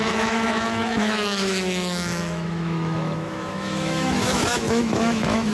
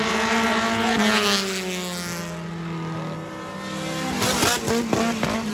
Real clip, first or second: second